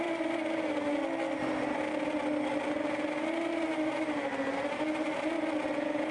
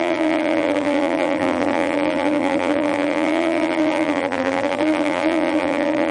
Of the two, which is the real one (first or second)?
first